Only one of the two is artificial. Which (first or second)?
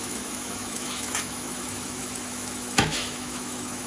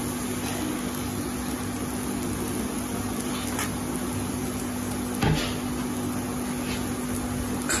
first